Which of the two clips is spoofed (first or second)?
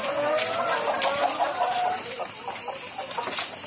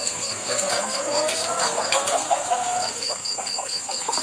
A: second